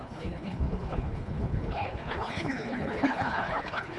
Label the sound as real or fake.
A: fake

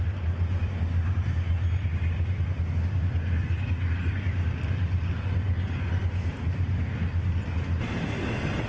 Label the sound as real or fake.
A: real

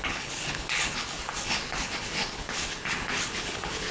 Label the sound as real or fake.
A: fake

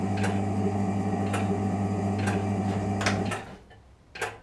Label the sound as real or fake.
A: real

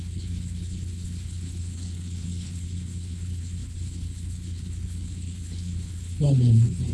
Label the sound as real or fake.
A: fake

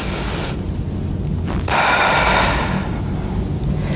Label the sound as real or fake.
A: real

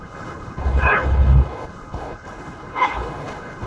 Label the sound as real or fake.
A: fake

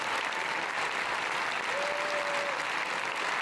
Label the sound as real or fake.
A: real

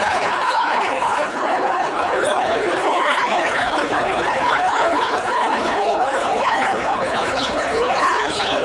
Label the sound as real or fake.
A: fake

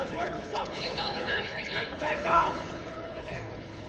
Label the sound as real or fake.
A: fake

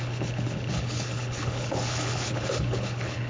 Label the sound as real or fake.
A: fake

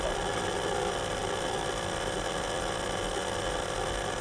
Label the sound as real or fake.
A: real